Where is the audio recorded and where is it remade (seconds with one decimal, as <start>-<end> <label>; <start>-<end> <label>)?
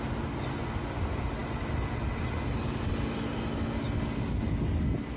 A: 0.0-5.2 recorded